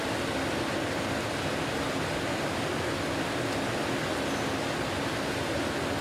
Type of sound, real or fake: real